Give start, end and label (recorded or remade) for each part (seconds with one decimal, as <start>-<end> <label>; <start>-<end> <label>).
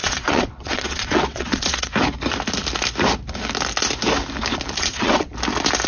0.0-1.9 remade; 1.9-4.8 recorded; 4.8-5.3 remade; 5.3-5.9 recorded